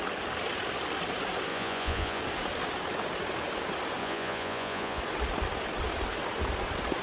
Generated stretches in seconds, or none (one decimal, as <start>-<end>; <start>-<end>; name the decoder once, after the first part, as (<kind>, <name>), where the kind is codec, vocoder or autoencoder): 1.5-2.2 (vocoder, Vocos); 4.0-5.0